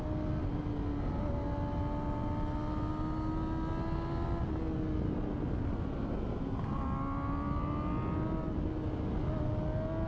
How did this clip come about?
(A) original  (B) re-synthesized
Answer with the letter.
A